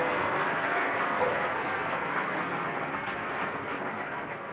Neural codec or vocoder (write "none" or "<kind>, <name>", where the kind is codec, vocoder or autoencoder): codec, SNAC